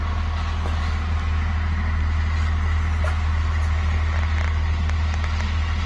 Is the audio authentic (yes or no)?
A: yes